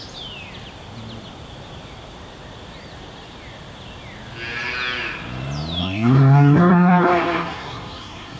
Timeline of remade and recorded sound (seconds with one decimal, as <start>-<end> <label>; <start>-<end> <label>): 0.0-5.8 recorded; 5.8-8.4 remade